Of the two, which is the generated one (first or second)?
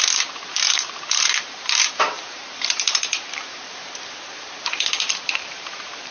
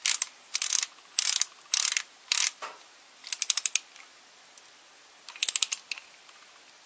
first